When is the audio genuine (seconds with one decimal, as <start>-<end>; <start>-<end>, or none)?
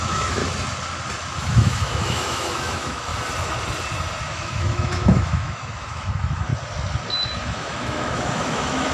0.4-1.4; 3.1-4.2; 6.5-7.4